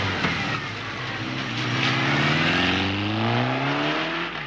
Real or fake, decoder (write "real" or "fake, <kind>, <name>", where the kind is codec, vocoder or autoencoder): real